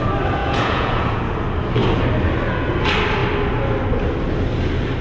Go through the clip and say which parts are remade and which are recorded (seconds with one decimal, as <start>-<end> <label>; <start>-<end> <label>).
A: 0.0-0.4 recorded; 0.4-1.2 remade; 1.2-5.0 recorded